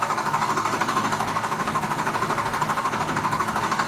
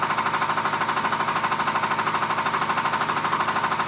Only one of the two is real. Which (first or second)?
second